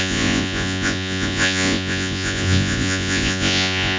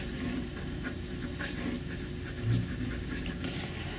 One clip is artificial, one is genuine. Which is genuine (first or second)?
second